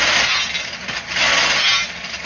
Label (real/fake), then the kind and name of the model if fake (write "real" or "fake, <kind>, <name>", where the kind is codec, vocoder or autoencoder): real